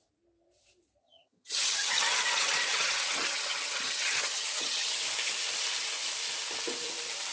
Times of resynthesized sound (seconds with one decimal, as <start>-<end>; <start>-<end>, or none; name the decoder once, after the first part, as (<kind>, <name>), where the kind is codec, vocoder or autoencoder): 1.0-5.0 (vocoder, HiFi-GAN)